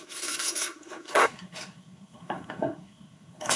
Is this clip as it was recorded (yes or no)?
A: no